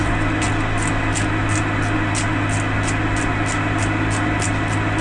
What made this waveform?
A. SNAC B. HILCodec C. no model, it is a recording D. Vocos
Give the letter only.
C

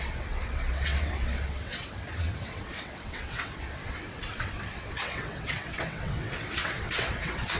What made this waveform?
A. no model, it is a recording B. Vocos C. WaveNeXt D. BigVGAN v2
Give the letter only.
C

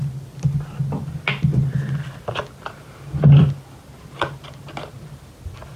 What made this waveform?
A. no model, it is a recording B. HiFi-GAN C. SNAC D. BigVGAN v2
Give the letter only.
A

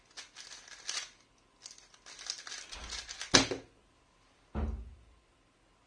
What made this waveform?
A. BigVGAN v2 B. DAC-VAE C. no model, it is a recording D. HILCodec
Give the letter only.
C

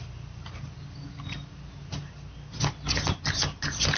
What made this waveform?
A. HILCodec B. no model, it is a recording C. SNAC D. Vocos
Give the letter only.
B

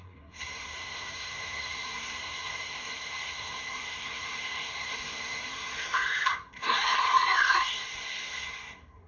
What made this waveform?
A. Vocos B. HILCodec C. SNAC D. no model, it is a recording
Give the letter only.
C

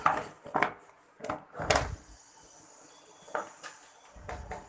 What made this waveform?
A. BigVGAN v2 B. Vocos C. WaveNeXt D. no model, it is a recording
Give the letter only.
D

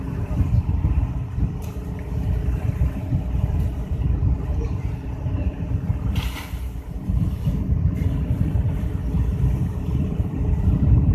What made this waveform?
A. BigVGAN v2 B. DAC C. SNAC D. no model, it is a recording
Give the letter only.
A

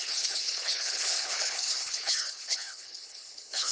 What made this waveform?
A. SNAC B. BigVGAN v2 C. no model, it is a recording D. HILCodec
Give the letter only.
D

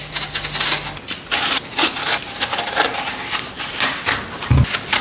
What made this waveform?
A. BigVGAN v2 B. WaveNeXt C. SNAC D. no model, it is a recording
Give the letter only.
D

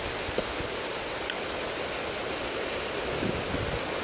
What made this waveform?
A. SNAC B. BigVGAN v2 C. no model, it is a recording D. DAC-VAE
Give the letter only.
C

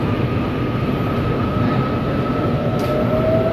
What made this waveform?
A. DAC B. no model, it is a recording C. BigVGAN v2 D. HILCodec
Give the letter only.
B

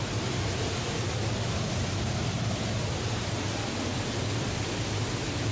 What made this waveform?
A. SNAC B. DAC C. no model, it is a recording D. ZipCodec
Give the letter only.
C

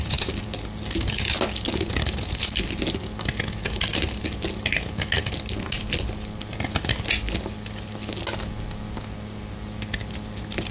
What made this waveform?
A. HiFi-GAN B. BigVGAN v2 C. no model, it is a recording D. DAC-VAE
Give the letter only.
C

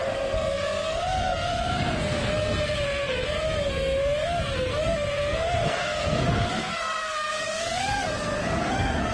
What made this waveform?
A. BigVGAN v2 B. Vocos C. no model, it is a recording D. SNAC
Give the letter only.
D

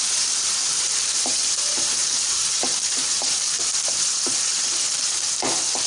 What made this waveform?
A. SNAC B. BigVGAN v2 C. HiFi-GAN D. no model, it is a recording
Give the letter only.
B